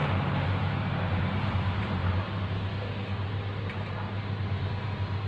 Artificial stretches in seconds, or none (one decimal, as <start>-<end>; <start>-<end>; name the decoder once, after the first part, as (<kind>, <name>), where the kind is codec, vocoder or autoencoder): none